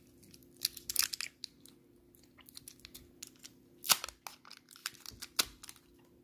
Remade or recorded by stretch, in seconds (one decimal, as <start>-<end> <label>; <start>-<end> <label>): 0.0-6.2 recorded